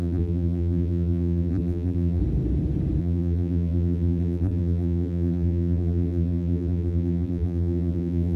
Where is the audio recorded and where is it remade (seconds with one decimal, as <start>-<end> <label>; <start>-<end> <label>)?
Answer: 0.0-2.2 remade; 2.2-3.0 recorded; 3.0-8.4 remade